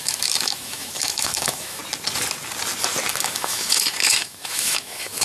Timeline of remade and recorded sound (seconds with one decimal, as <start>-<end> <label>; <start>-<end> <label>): 0.0-1.8 remade; 1.8-3.1 recorded; 3.1-5.2 remade